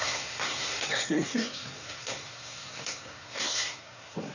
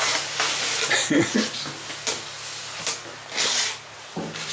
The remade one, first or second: first